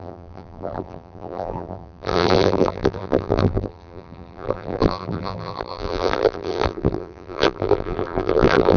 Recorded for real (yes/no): no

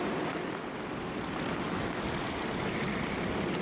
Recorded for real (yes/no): yes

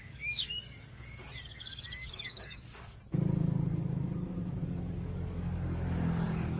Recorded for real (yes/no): no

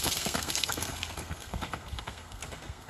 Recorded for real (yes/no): no